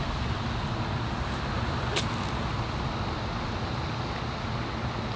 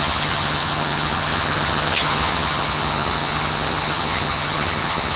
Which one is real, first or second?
first